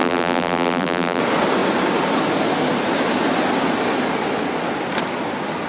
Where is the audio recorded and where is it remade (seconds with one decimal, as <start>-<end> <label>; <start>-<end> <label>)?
0.0-1.2 remade; 1.2-5.7 recorded